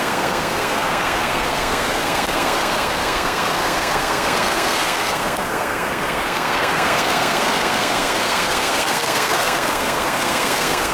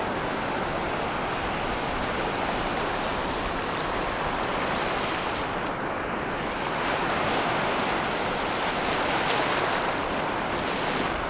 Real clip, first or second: second